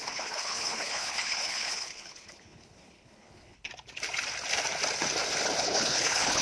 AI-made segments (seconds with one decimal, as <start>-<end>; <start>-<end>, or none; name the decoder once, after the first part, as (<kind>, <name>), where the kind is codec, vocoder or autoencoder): 0.0-3.7 (codec, HILCodec); 5.6-6.4